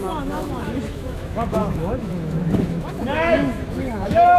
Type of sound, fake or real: fake